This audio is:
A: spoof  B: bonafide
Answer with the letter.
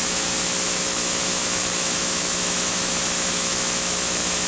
A